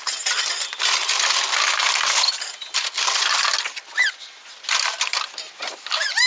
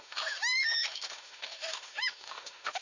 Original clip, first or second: first